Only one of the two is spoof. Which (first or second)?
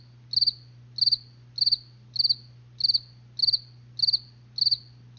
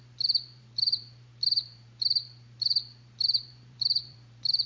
second